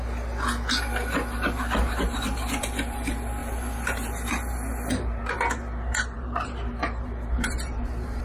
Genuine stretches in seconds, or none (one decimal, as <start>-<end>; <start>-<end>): 0.0-3.4